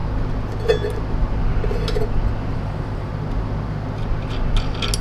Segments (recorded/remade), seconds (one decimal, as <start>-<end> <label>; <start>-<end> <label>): 0.0-2.5 recorded; 2.5-3.1 remade; 3.1-5.0 recorded